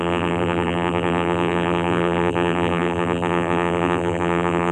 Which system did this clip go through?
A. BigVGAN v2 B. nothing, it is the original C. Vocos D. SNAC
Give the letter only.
A